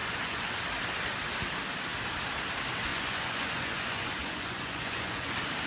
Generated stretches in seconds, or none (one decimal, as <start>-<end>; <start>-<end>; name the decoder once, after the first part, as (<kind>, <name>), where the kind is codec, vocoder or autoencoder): 0.0-0.5 (vocoder, Vocos); 2.9-5.3